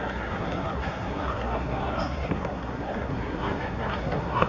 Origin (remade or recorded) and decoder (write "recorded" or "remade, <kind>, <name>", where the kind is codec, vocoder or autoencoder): remade, codec, SNAC